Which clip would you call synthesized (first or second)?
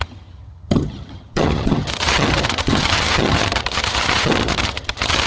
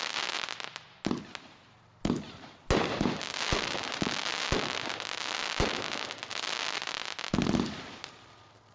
first